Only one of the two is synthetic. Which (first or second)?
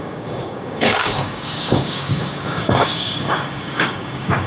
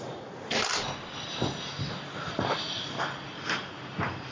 first